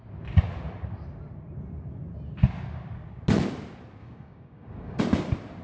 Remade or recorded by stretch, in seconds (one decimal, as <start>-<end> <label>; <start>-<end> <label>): 0.0-4.0 recorded; 4.0-5.0 remade; 5.0-5.6 recorded